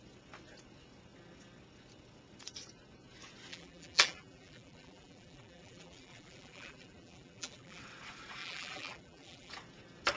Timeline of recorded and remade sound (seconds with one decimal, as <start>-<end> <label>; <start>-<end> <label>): 0.0-3.5 recorded; 3.5-7.8 remade; 7.8-8.4 recorded; 8.4-9.5 remade; 9.5-10.2 recorded